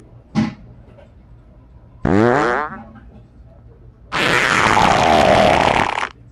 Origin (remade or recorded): recorded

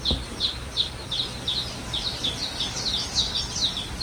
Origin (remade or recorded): recorded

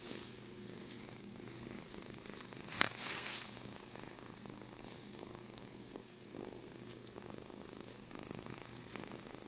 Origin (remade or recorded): remade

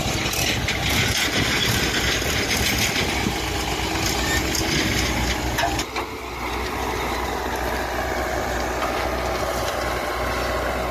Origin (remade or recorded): recorded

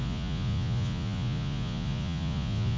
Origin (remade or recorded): remade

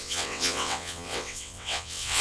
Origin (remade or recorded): remade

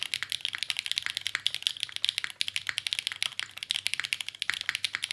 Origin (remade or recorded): recorded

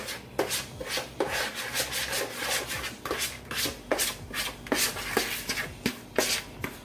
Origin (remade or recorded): recorded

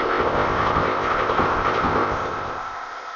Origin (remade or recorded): remade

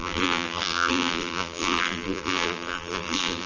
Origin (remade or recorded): remade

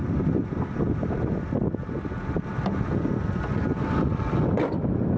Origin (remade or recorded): recorded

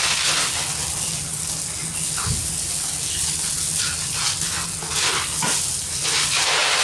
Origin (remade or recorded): recorded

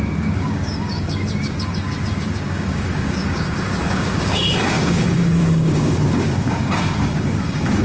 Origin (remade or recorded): remade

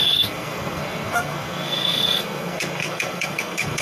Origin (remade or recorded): remade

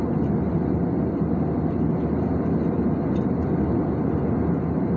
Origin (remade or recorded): recorded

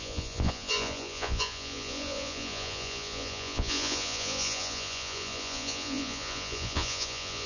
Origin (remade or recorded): remade